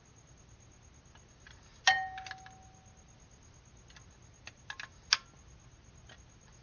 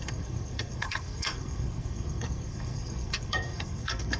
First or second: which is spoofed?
second